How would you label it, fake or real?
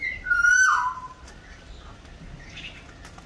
real